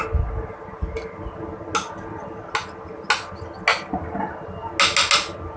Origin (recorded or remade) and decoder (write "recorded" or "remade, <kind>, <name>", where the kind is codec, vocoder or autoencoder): recorded